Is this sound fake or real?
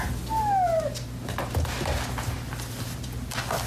real